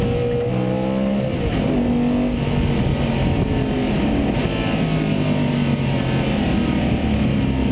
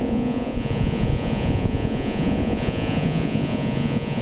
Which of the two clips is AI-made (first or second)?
second